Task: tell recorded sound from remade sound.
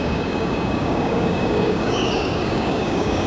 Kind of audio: remade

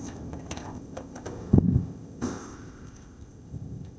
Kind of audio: remade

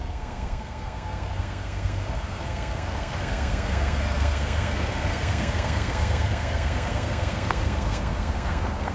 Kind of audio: remade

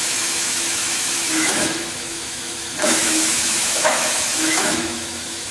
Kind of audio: remade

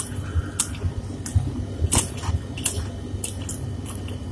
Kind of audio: recorded